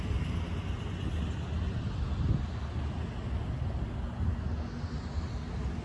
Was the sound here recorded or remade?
recorded